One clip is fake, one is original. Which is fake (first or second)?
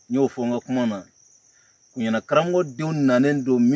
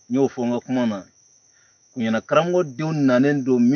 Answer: second